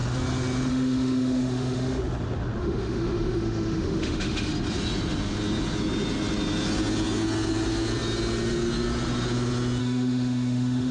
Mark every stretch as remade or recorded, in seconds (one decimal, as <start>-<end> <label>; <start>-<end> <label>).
0.0-0.7 recorded; 0.7-2.0 remade; 2.0-2.6 recorded; 2.6-4.5 remade; 4.5-9.8 recorded; 9.8-10.9 remade

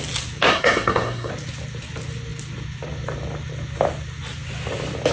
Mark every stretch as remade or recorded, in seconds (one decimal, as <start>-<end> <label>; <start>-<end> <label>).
0.0-0.5 recorded; 0.5-1.3 remade; 1.3-5.1 recorded

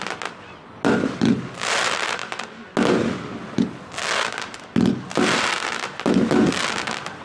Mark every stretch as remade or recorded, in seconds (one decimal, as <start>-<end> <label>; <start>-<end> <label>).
0.0-7.2 recorded

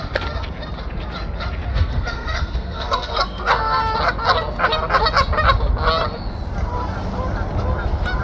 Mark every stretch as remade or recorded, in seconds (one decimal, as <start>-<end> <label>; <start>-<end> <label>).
0.0-1.7 recorded; 1.7-3.8 remade; 3.8-8.2 recorded

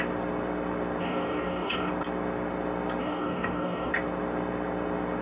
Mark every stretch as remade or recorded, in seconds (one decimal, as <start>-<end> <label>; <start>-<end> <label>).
0.0-1.0 recorded; 1.0-1.9 remade; 1.9-3.0 recorded; 3.0-3.9 remade; 3.9-5.2 recorded